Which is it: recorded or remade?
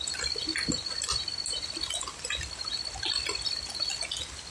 recorded